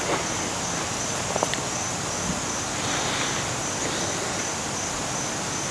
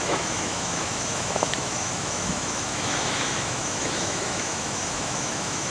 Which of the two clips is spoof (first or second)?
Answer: second